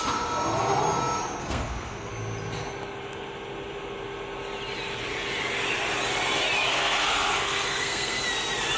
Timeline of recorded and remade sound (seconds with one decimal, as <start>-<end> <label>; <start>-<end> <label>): 0.0-1.4 recorded; 1.4-2.1 remade; 2.1-6.7 recorded; 6.7-8.2 remade; 8.2-8.8 recorded